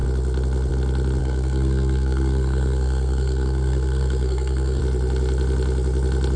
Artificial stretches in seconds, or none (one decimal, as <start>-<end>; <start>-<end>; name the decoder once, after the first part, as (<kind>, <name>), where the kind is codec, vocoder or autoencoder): 1.2-4.8 (codec, SNAC)